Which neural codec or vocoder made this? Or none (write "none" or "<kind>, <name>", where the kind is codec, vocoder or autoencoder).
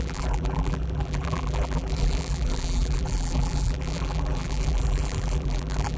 vocoder, BigVGAN v2